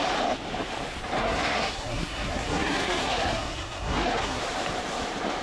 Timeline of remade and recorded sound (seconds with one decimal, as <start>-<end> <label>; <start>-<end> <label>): 0.0-1.2 recorded; 1.2-4.4 remade; 4.4-5.4 recorded